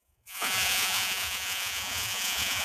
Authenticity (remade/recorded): remade